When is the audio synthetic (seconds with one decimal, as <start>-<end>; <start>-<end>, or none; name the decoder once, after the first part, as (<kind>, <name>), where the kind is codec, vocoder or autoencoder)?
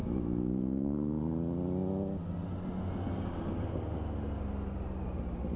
0.0-1.2 (autoencoder, DAC-VAE)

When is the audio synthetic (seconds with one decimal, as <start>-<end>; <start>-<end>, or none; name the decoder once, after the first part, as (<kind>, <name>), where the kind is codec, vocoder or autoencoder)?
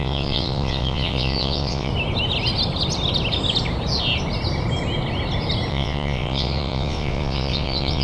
0.0-1.9 (vocoder, WaveNeXt); 5.7-8.0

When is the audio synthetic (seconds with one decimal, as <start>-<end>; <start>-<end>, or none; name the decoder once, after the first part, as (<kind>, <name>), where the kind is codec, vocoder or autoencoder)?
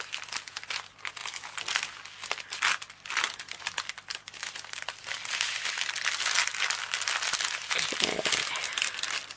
none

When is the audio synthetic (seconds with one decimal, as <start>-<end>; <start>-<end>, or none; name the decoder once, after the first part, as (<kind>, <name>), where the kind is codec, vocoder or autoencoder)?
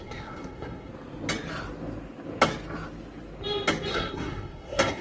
0.0-0.9 (codec, SNAC); 3.9-5.0